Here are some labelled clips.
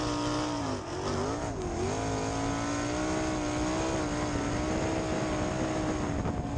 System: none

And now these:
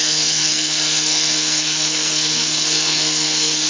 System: codec, SNAC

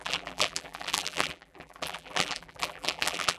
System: vocoder, BigVGAN v2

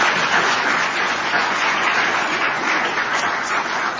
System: vocoder, Vocos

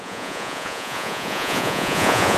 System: vocoder, Vocos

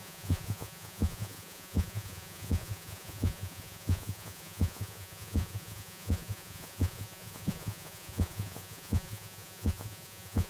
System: vocoder, Vocos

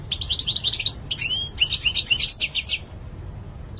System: none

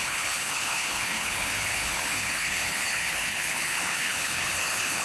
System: codec, HILCodec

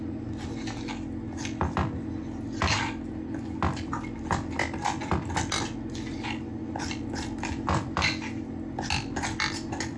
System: none